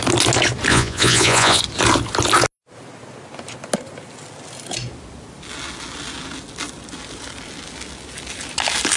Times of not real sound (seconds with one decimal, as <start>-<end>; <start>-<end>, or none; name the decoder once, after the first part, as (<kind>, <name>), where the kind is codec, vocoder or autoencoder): 0.7-1.6 (vocoder, Vocos)